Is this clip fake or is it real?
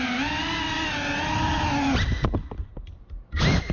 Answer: real